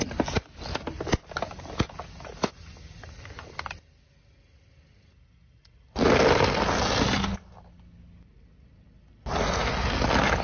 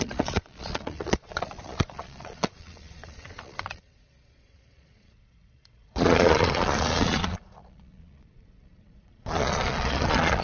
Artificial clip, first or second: second